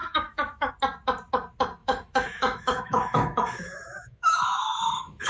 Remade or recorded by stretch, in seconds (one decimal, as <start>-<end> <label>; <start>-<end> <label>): 0.0-0.7 remade; 0.7-1.8 recorded; 1.8-5.3 remade